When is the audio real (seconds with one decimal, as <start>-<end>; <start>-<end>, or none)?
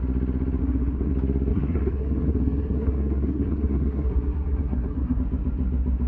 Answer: 0.0-0.6; 1.1-1.5; 5.2-6.1